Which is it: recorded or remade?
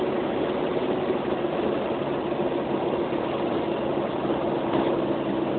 recorded